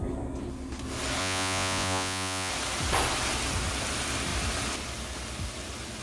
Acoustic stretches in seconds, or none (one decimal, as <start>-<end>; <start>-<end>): 0.0-1.2; 2.5-6.0